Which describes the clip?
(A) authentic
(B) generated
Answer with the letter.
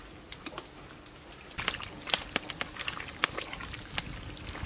A